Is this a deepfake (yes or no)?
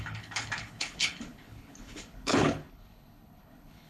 yes